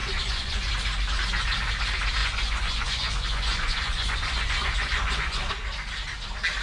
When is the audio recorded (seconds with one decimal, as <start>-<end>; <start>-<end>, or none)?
0.7-2.2; 5.5-6.6